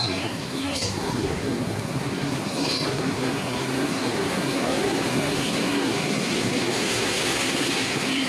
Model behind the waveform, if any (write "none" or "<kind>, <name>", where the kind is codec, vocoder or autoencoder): codec, SNAC